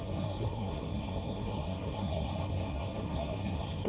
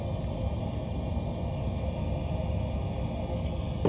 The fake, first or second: first